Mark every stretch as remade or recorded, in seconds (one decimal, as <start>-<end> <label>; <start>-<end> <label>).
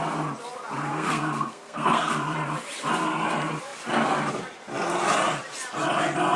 0.0-0.9 recorded; 0.9-2.1 remade; 2.1-6.4 recorded